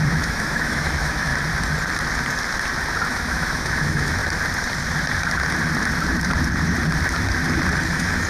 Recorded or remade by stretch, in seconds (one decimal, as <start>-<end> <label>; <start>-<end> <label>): 0.0-1.3 remade; 1.3-3.1 recorded; 3.1-4.2 remade; 4.2-7.9 recorded; 7.9-8.3 remade